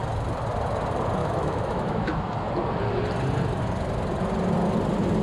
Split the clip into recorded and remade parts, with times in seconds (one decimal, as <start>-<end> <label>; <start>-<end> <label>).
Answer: 0.0-1.2 recorded; 1.2-2.5 remade; 2.5-5.2 recorded